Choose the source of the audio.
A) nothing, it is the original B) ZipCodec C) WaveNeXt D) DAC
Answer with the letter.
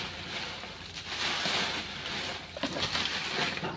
A